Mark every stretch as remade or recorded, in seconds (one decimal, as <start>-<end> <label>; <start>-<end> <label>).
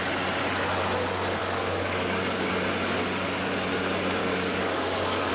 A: 0.0-1.4 recorded; 1.4-2.5 remade; 2.5-4.2 recorded; 4.2-5.3 remade